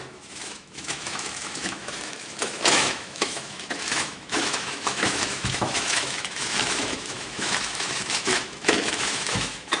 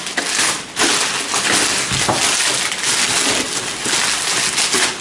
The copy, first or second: first